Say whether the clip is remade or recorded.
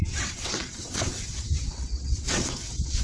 remade